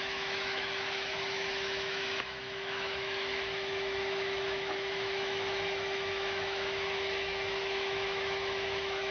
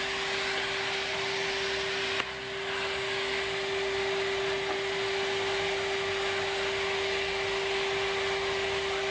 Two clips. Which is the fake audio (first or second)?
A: first